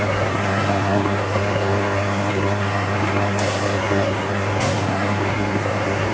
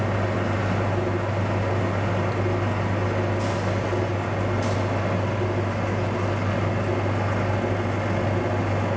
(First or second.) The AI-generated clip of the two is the first